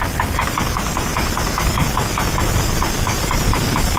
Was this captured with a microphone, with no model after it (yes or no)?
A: no